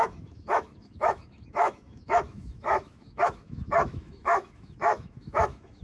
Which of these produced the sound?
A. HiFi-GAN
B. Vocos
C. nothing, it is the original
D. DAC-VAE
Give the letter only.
D